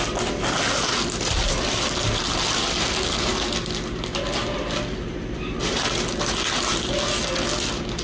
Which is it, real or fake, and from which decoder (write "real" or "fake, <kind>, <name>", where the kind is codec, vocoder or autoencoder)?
real